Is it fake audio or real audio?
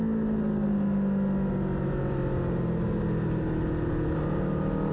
real